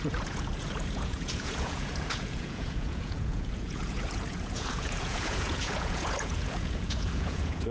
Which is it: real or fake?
fake